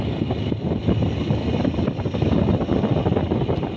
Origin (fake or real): real